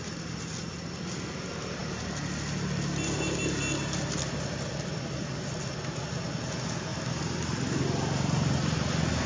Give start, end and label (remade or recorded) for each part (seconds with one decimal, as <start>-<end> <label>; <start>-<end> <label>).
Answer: 0.0-9.3 recorded